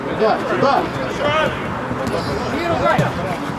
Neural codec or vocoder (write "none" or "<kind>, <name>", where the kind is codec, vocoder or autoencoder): none